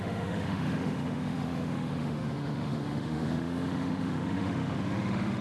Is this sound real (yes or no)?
no